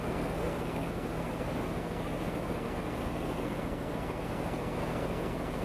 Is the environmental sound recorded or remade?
remade